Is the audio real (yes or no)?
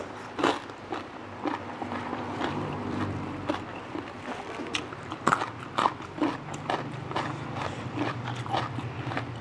no